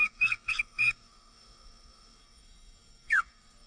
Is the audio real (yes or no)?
no